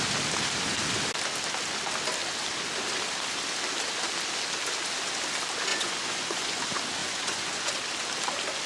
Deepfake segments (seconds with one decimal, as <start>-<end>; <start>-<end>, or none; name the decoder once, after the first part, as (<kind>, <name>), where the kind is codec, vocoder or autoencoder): 5.7-6.6 (vocoder, Vocos); 7.0-7.7